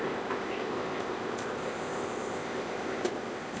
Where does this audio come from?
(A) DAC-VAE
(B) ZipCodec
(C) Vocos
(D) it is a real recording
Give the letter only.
B